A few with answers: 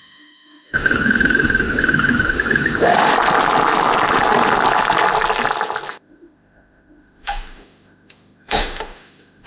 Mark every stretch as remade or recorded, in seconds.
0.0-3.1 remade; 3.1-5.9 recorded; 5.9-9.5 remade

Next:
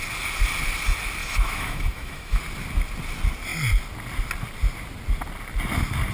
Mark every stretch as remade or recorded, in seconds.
0.0-1.2 recorded; 1.2-2.4 remade; 2.4-6.1 recorded

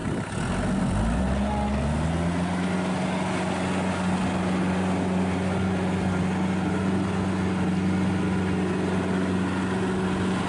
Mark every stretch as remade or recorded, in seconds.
0.0-10.5 recorded

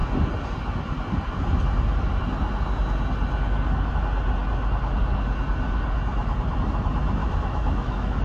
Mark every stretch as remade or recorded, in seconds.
0.0-7.2 recorded; 7.2-8.2 remade

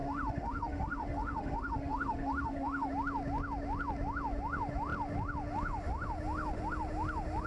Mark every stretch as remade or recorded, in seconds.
0.0-2.9 remade; 2.9-7.5 recorded

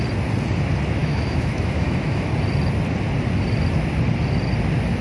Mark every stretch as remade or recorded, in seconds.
0.0-1.0 recorded; 1.0-2.3 remade; 2.3-5.0 recorded